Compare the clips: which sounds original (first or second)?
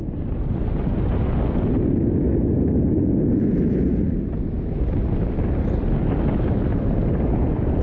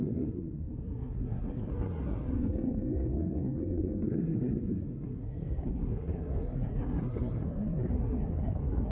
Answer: first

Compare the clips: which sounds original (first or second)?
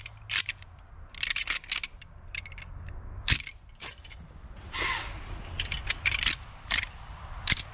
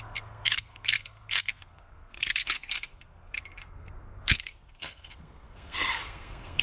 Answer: first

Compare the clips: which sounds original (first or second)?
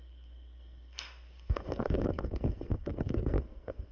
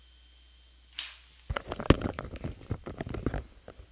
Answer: second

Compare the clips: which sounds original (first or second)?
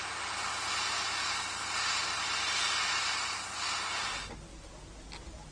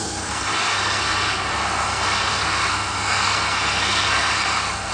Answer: first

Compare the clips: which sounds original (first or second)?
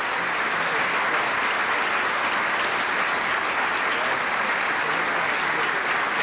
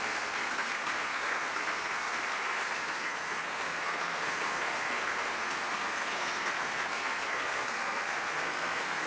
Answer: first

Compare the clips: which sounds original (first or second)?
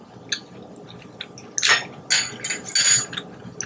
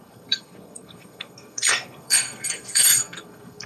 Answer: first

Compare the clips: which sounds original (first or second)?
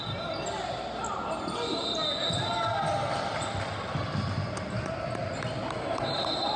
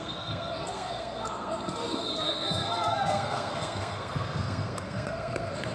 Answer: first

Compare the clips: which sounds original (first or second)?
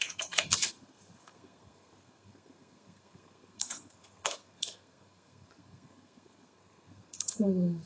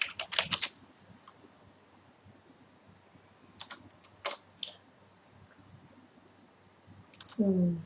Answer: second